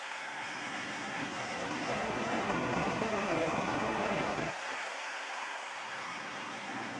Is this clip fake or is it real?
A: fake